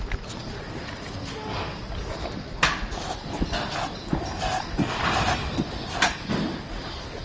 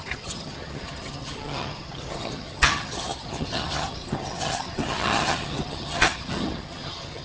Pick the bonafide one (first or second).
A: first